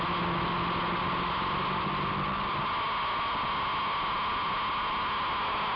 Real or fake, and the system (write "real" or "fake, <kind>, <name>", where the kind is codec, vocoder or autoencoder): real